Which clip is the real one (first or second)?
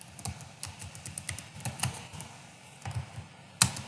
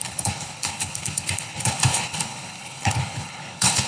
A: first